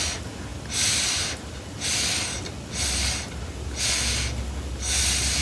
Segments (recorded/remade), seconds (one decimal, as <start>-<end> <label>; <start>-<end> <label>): 0.0-5.4 recorded